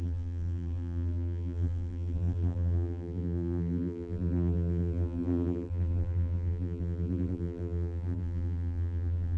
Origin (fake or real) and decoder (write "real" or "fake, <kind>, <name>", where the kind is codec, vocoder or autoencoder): fake, vocoder, BigVGAN v2